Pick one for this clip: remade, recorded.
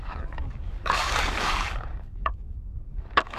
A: remade